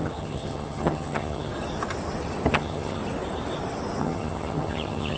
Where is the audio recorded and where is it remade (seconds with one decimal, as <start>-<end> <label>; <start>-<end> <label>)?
0.0-1.5 remade; 1.5-2.5 recorded; 2.5-3.0 remade; 3.0-4.0 recorded; 4.0-5.2 remade